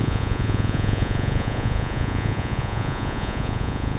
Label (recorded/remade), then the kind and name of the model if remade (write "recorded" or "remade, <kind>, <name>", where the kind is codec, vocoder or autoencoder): remade, vocoder, Vocos